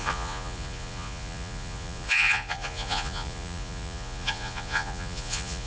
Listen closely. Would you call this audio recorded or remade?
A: remade